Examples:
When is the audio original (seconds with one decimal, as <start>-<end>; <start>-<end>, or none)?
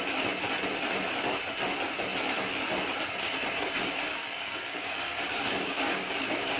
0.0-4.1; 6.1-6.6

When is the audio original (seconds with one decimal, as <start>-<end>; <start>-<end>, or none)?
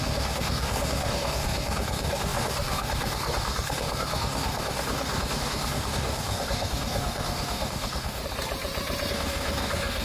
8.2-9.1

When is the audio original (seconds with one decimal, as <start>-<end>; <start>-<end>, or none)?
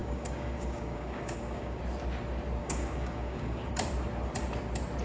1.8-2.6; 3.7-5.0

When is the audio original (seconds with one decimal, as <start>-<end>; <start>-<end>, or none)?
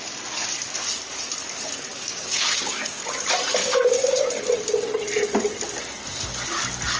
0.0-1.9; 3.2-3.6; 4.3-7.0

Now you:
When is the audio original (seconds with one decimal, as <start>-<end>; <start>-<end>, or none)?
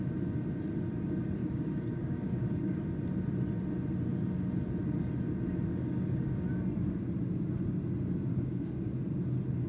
0.0-1.4; 2.8-5.7; 6.3-8.3; 9.0-9.7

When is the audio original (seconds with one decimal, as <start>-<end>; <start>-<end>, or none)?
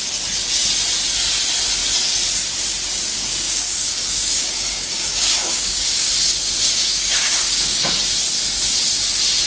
0.0-3.1; 6.1-6.8; 7.9-9.5